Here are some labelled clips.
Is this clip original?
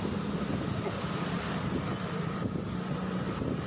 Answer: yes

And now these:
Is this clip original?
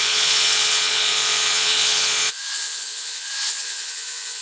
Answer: no